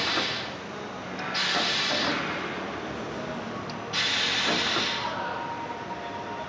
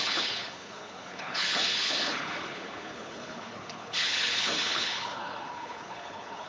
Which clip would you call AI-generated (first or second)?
second